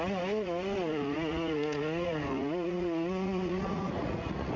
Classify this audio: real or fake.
fake